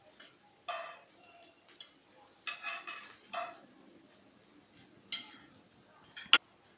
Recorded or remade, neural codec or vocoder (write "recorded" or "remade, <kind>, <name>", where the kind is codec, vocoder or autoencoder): recorded